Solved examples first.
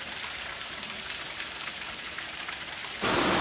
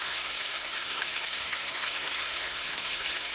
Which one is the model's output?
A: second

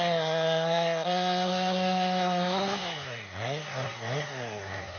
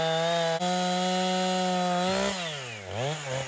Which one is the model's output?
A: first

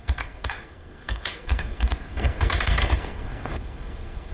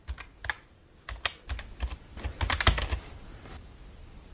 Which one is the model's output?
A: first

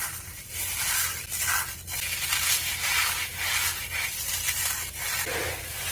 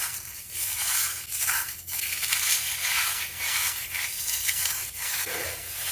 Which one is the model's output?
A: second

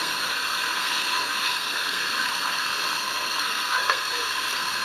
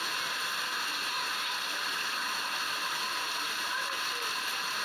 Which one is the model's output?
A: first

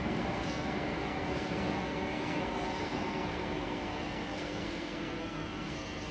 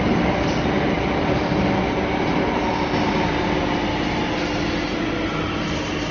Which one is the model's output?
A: first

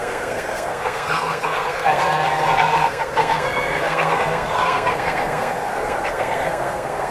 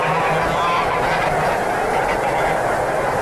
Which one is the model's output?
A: first